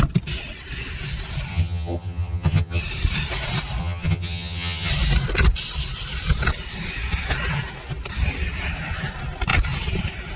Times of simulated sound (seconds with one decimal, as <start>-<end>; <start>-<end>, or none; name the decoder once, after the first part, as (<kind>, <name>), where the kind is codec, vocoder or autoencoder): 1.5-2.8 (vocoder, HiFi-GAN); 3.8-4.9

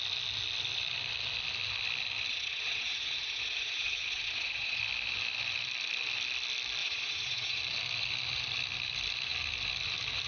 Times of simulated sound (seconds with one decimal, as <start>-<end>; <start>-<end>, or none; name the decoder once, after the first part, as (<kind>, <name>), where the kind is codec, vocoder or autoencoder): 2.3-4.8 (vocoder, Vocos); 6.8-7.6

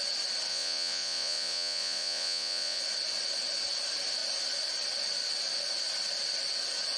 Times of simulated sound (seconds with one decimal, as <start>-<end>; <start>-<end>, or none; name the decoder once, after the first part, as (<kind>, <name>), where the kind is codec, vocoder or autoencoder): 0.5-2.8 (vocoder, Vocos)

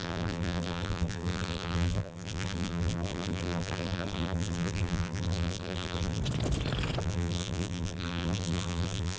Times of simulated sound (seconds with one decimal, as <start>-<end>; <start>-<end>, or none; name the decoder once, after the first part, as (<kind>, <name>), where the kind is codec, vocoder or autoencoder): 0.0-6.2 (vocoder, BigVGAN v2); 7.0-9.2

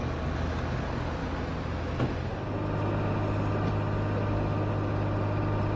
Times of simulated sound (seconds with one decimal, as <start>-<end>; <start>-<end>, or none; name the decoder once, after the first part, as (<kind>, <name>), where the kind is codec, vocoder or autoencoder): none